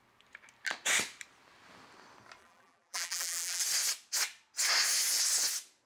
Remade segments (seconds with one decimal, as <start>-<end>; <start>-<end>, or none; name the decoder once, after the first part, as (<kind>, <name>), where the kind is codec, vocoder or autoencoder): 2.4-3.6 (vocoder, BigVGAN v2)